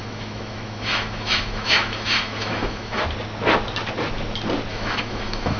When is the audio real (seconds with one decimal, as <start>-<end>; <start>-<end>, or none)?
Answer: 3.0-4.7